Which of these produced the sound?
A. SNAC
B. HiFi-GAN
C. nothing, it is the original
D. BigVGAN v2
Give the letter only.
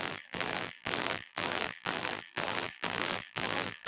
D